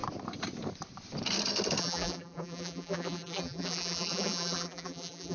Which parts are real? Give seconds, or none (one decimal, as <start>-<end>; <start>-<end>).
0.0-1.8